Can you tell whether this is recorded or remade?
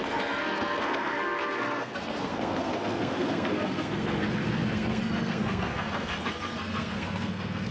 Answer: remade